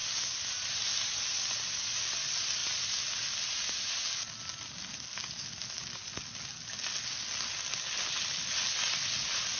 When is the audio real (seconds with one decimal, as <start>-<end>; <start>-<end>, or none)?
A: 0.0-9.6

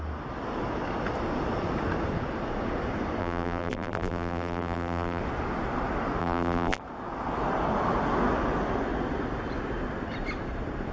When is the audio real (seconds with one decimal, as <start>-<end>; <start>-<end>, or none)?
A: 0.0-3.2; 5.2-6.2; 6.8-10.9

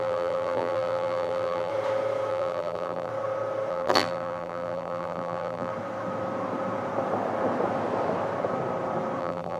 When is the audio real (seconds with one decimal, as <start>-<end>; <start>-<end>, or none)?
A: 1.7-2.3; 3.1-3.7; 5.7-9.2